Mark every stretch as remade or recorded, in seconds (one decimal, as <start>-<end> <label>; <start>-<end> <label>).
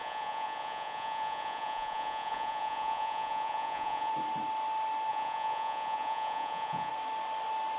0.0-4.1 remade; 4.1-5.1 recorded; 5.1-6.9 remade; 6.9-7.8 recorded